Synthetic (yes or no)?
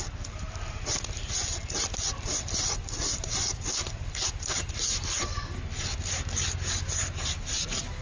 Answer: no